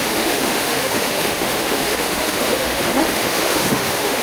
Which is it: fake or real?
fake